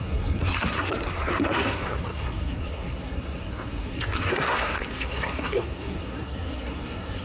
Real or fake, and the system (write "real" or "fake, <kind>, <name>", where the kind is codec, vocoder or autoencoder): fake, codec, SNAC